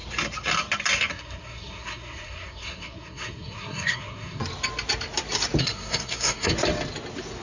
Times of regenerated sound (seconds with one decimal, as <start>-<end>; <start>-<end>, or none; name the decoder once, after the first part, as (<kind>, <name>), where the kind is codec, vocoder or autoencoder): 1.1-4.4 (codec, SNAC); 5.6-6.5